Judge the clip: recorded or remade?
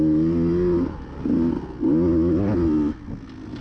recorded